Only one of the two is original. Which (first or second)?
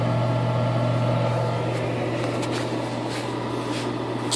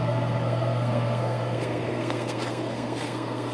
first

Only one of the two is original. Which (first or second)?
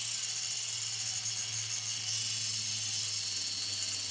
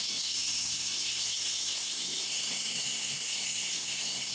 first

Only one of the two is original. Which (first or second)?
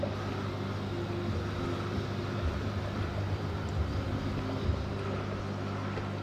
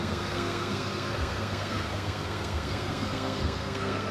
first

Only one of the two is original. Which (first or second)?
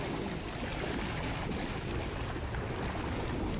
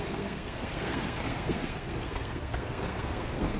first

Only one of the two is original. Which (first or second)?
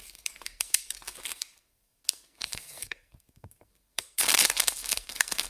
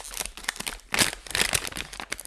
second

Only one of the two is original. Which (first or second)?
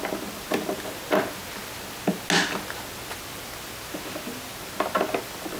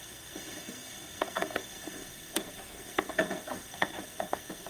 first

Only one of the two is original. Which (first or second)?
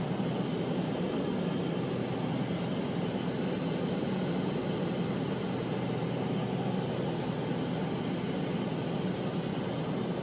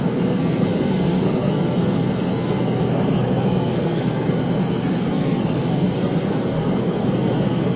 first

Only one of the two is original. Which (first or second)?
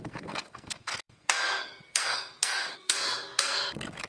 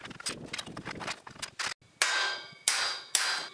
second